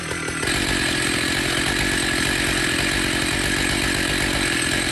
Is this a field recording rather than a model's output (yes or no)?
yes